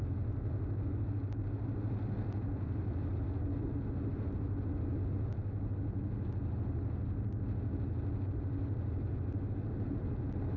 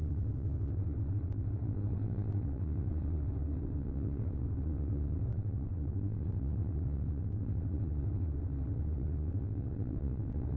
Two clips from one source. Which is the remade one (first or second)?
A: second